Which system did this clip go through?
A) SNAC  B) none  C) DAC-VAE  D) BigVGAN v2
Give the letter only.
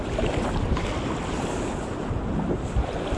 B